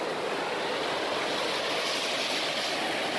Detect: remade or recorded recorded